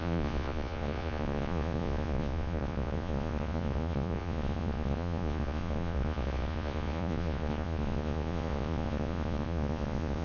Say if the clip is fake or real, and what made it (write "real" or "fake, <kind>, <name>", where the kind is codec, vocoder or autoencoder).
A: fake, vocoder, Vocos